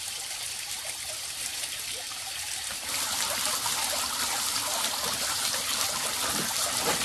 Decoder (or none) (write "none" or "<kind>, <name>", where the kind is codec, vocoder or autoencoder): none